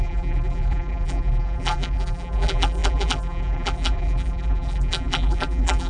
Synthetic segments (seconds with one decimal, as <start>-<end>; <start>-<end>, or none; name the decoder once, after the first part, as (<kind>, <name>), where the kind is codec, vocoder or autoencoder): 0.0-5.9 (vocoder, BigVGAN v2)